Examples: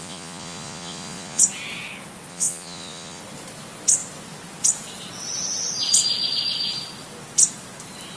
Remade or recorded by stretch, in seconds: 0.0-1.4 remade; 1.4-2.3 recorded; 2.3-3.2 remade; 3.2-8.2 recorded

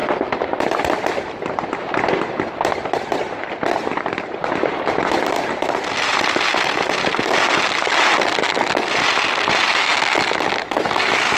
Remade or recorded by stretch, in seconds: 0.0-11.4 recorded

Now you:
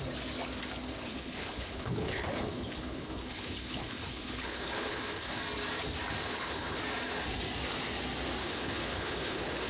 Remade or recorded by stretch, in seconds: 0.0-1.1 recorded; 1.1-5.4 remade; 5.4-6.2 recorded; 6.2-6.8 remade; 6.8-8.4 recorded; 8.4-9.7 remade

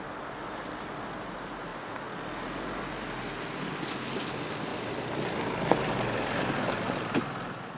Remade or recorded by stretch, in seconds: 0.0-7.8 recorded

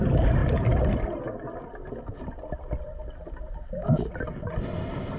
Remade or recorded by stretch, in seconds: 0.0-5.2 recorded